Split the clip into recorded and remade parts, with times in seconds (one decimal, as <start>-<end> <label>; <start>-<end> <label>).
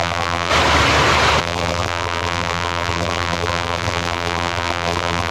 0.0-0.5 remade; 0.5-1.4 recorded; 1.4-5.3 remade